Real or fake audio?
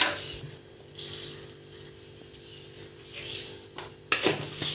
real